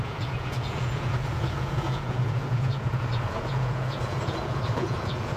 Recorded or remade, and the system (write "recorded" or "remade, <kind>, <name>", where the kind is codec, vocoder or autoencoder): remade, vocoder, Vocos